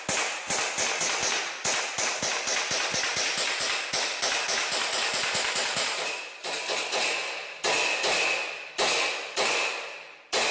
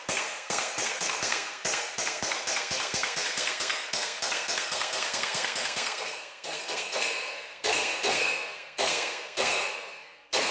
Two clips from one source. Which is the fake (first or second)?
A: second